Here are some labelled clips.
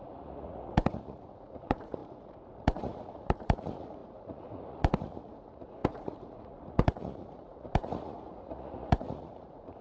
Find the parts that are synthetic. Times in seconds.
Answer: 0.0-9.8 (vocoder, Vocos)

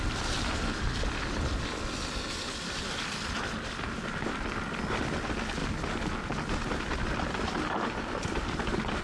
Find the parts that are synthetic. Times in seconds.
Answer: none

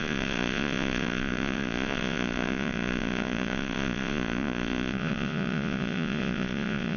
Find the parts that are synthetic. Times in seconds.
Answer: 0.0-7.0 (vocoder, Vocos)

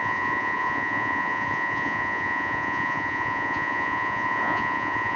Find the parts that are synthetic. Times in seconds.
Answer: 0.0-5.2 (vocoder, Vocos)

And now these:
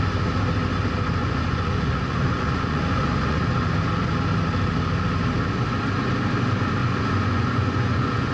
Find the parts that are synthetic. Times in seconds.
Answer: 1.2-3.4 (vocoder, Vocos); 6.8-8.3

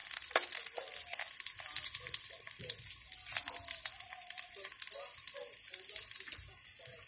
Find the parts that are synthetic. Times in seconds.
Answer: none

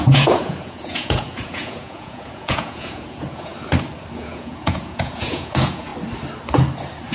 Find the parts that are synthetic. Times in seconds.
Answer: 0.0-3.5 (vocoder, Vocos); 4.2-5.9